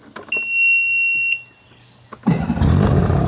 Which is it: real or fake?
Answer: real